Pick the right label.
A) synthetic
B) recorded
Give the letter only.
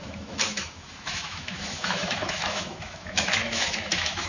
A